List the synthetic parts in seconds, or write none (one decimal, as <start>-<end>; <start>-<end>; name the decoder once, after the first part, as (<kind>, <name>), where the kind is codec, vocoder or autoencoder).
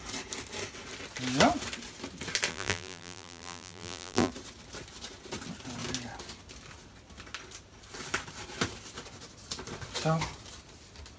2.5-4.3 (vocoder, BigVGAN v2)